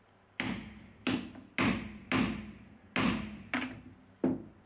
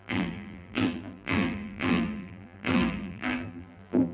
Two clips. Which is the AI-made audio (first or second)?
second